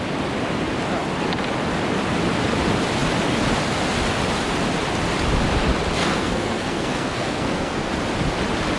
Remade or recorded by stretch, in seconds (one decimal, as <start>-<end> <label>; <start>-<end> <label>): 0.0-6.0 recorded; 6.0-7.9 remade; 7.9-8.8 recorded